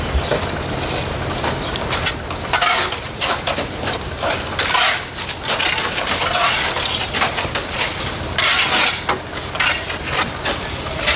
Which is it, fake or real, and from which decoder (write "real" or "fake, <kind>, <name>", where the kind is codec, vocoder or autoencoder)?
real